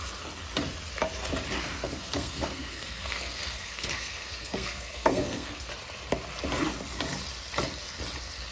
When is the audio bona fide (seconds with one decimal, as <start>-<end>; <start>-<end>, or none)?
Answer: 0.0-1.6; 5.7-8.5